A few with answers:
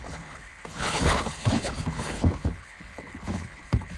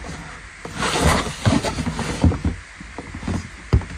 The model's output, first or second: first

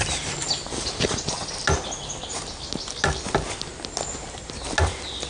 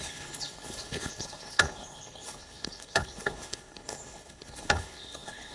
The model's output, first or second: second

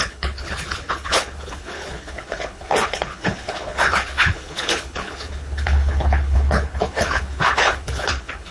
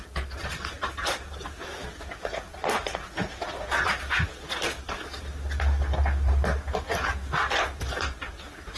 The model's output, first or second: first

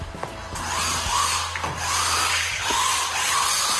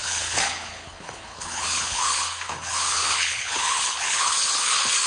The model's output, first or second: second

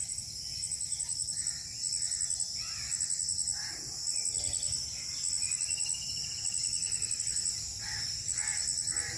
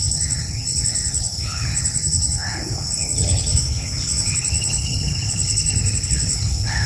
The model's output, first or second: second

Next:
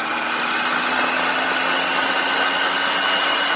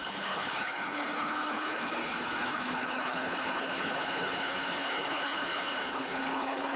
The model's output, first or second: second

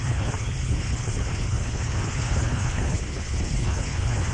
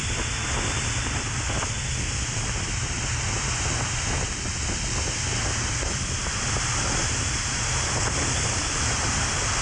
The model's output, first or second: first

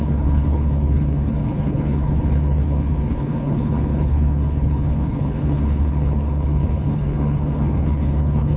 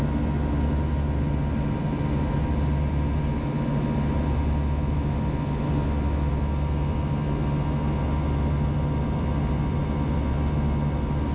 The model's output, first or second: first